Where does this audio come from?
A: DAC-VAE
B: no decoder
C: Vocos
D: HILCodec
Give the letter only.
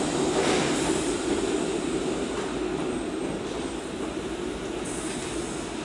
B